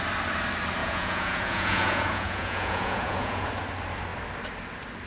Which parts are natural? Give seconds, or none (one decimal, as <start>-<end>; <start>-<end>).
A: 0.0-0.8; 3.5-5.1

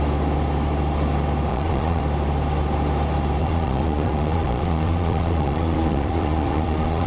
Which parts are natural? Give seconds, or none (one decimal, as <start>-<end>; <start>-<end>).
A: 0.0-1.5; 2.0-3.4

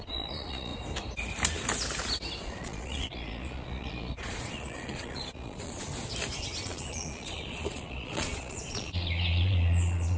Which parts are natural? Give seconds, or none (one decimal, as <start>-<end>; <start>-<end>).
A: 0.7-2.4; 5.9-6.4

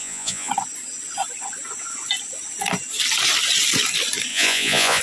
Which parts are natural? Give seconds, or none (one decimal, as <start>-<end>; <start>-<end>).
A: 0.5-4.3